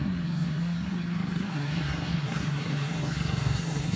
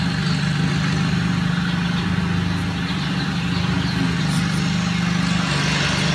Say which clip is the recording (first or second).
second